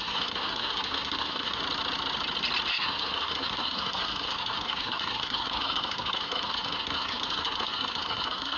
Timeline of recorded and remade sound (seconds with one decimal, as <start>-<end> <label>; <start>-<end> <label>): 0.0-1.6 remade; 1.6-2.7 recorded; 2.7-8.6 remade